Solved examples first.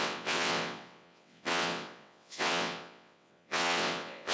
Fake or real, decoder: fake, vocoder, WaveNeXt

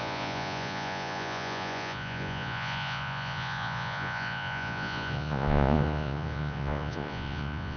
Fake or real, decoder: fake, vocoder, Vocos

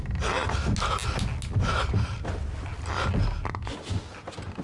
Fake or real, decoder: real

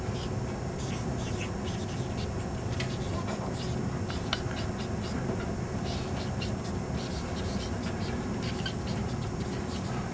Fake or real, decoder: real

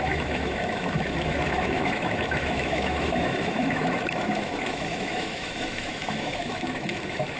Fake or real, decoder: fake, autoencoder, DAC-VAE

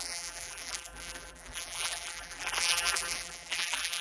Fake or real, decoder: fake, vocoder, BigVGAN v2